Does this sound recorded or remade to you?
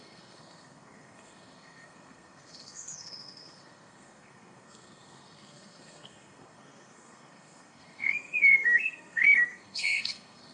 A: remade